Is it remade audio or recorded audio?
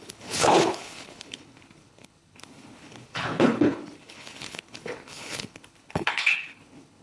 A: remade